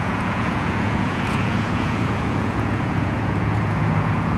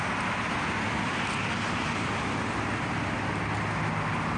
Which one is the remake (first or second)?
first